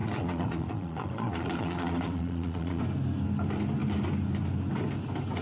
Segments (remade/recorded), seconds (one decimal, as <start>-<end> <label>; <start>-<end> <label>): 0.0-2.8 remade; 2.8-5.4 recorded